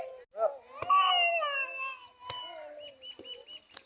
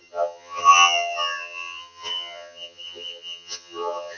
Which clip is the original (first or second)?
first